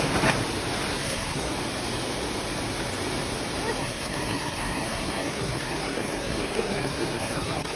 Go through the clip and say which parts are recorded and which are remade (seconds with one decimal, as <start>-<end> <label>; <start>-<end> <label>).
0.0-0.9 recorded; 0.9-1.5 remade; 1.5-3.8 recorded; 3.8-7.8 remade